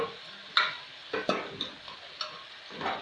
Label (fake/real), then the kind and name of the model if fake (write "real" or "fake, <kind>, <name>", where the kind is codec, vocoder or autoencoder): real